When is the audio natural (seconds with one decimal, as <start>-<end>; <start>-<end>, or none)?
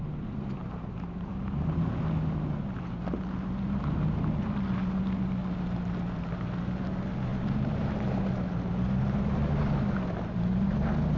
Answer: 0.0-0.6; 1.7-7.3; 8.2-11.2